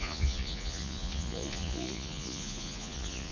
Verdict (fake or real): fake